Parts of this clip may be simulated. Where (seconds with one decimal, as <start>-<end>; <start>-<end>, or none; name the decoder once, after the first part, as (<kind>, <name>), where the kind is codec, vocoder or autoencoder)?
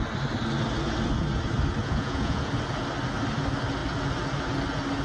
1.8-2.5 (vocoder, Vocos)